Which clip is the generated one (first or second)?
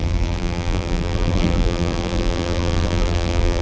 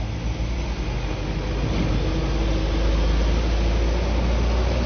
first